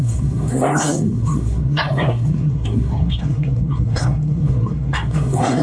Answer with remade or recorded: remade